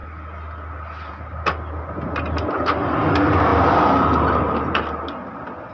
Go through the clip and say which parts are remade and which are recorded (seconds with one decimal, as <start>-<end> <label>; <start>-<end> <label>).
0.0-3.5 recorded; 3.5-4.7 remade; 4.7-5.7 recorded